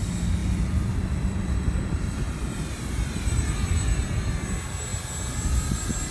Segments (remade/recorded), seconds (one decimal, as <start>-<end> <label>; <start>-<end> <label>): 0.0-0.4 recorded; 0.4-4.1 remade; 4.1-6.1 recorded